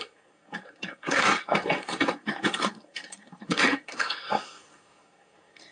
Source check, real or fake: fake